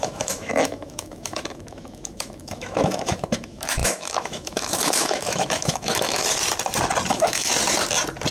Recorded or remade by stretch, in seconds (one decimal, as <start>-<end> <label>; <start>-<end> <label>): 0.0-6.2 remade; 6.2-7.1 recorded; 7.1-7.5 remade; 7.5-8.3 recorded